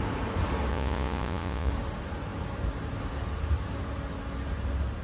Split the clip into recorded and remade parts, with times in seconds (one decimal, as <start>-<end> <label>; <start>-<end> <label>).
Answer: 0.0-0.7 recorded; 0.7-1.7 remade; 1.7-5.0 recorded